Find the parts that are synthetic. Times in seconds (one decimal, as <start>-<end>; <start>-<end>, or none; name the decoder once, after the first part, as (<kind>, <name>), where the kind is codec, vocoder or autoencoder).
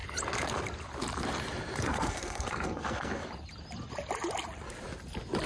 1.9-3.2 (codec, SNAC)